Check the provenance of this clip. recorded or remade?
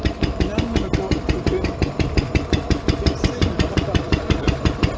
recorded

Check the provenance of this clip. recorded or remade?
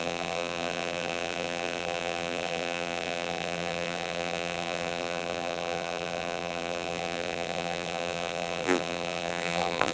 remade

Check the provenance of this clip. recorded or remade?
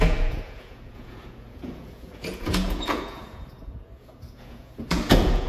remade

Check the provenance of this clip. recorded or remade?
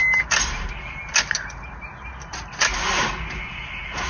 recorded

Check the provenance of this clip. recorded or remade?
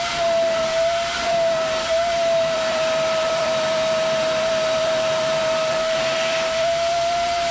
remade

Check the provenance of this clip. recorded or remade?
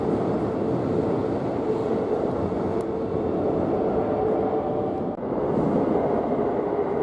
recorded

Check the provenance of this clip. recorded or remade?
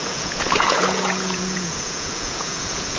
remade